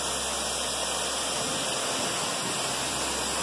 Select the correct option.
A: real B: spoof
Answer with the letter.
A